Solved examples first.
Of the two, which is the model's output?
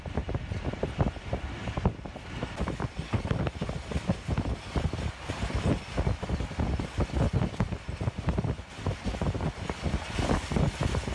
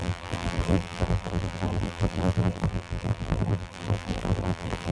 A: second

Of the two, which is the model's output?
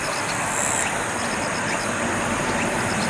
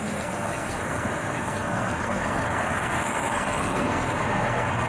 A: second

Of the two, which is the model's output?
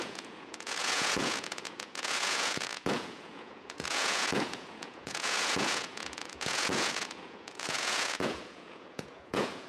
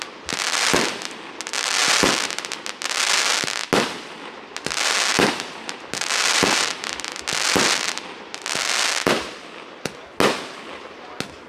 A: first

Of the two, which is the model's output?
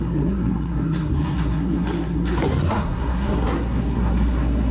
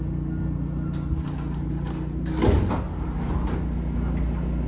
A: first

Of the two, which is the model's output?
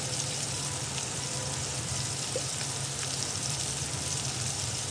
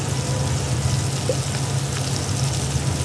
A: first